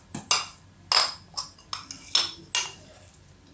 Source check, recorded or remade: recorded